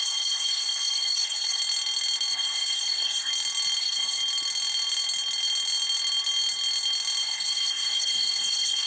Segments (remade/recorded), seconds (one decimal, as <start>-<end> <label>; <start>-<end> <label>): 0.0-1.6 remade; 1.6-2.3 recorded; 2.3-3.3 remade; 3.3-3.8 recorded; 3.8-4.2 remade; 4.2-7.2 recorded; 7.2-8.9 remade